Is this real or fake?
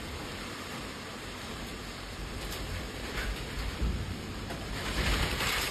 fake